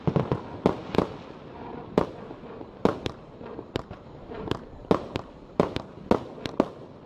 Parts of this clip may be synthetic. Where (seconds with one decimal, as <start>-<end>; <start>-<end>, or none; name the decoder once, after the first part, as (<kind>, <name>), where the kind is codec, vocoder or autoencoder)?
2.9-5.9 (vocoder, BigVGAN v2)